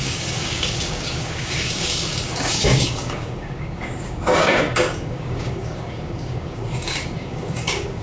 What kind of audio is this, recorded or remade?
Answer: remade